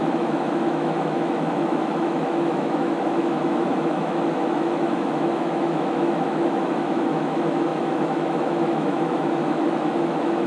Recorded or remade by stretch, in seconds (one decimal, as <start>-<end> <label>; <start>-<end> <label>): 0.0-10.5 remade